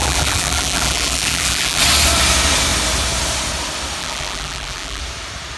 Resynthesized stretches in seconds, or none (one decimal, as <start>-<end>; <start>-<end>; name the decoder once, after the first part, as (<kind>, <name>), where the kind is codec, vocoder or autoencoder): 0.0-1.8 (vocoder, BigVGAN v2); 4.0-5.0